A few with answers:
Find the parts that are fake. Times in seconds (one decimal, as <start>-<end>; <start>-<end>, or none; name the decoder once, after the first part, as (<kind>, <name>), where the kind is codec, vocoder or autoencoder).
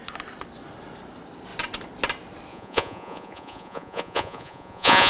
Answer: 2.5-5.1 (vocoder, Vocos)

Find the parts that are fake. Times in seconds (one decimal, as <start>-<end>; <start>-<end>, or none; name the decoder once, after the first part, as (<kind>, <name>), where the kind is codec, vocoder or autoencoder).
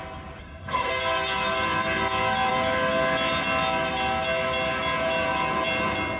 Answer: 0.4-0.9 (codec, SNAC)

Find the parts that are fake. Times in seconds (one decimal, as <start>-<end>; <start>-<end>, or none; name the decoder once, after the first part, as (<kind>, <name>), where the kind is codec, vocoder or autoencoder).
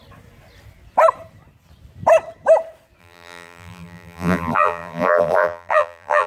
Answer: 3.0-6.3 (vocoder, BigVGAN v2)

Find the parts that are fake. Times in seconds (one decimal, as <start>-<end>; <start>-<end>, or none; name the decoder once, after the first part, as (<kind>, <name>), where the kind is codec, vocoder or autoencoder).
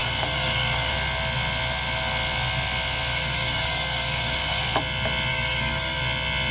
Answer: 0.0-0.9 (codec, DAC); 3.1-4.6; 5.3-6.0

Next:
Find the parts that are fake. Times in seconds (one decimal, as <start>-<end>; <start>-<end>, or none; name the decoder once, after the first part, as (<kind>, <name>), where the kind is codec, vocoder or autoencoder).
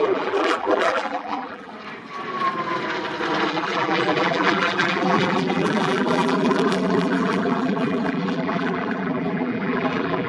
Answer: 0.0-1.7 (vocoder, BigVGAN v2); 3.5-10.3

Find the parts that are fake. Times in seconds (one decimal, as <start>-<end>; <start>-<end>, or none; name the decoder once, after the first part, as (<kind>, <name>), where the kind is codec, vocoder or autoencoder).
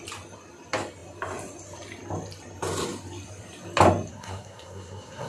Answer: 4.1-5.3 (codec, SNAC)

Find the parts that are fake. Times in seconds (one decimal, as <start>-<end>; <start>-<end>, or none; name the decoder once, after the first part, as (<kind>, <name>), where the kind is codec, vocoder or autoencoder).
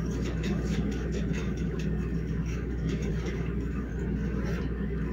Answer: 0.0-3.9 (codec, DAC); 4.6-5.1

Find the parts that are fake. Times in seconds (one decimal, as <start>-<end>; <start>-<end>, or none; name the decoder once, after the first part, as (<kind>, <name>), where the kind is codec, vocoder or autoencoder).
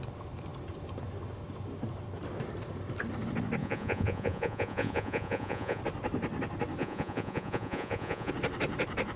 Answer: 3.6-5.8 (vocoder, Vocos); 6.8-8.3